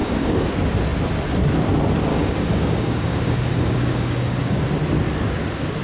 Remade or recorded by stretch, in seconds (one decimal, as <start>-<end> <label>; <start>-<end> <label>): 0.0-0.5 remade; 0.5-2.1 recorded; 2.1-4.6 remade; 4.6-5.8 recorded